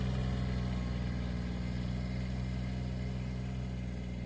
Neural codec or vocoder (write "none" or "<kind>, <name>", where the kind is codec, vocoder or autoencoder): none